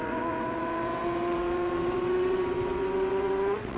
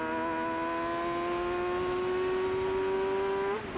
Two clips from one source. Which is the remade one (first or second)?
first